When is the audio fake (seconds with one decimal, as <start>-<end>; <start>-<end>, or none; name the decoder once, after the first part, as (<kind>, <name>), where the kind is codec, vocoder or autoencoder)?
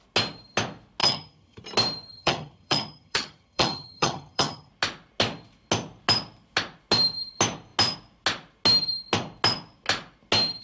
1.0-1.6 (vocoder, HiFi-GAN); 2.1-4.7